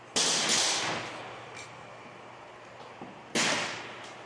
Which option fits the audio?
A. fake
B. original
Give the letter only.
B